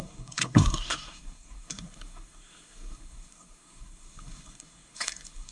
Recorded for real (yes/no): no